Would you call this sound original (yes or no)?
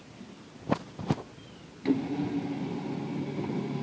yes